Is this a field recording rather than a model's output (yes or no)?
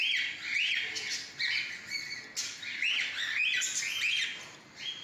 yes